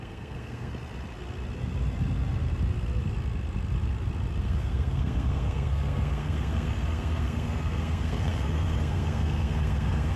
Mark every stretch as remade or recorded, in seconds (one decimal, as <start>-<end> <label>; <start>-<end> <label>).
0.0-0.7 remade; 0.7-4.4 recorded; 4.4-10.2 remade